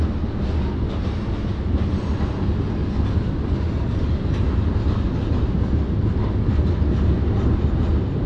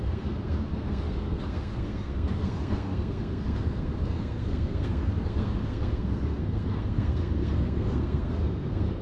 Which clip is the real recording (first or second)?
first